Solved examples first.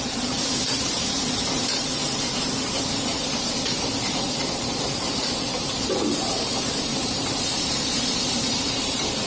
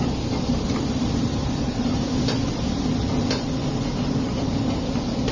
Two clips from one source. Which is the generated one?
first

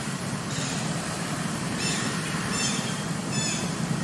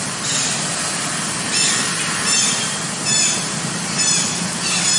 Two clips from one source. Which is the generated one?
first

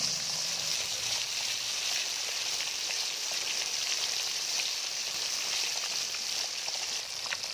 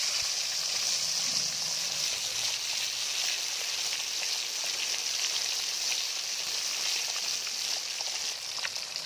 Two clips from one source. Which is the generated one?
first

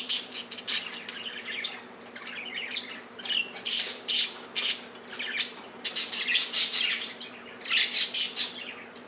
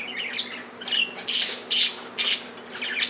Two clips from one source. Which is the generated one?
first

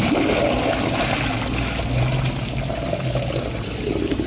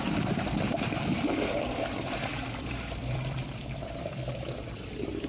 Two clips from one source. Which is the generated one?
second